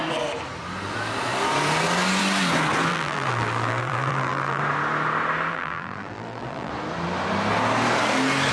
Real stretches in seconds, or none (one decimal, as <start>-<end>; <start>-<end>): 0.0-2.9; 4.6-5.5; 6.7-8.5